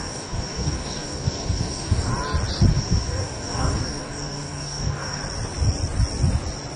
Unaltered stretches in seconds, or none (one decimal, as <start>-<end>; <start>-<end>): 2.1-2.7; 5.2-6.8